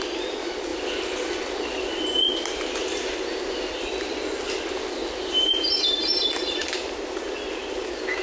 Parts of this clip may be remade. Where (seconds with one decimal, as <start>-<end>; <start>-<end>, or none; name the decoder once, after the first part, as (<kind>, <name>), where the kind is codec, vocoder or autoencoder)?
none